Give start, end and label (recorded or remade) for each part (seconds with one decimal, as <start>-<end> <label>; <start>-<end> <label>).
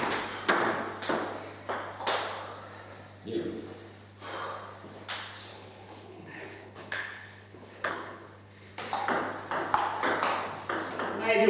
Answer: 0.0-5.5 recorded; 5.5-8.7 remade; 8.7-11.5 recorded